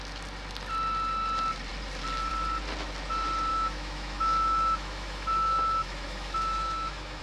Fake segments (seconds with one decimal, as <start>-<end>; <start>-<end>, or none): 3.5-7.2